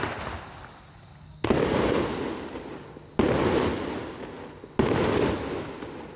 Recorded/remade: recorded